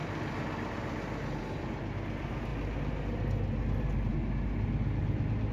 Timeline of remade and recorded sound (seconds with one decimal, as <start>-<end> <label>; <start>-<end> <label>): 0.0-5.5 recorded